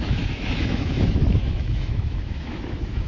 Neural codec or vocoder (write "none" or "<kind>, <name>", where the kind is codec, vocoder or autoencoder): autoencoder, DAC-VAE